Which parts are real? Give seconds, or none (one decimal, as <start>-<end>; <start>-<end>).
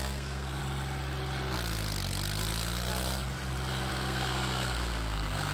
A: 0.6-3.9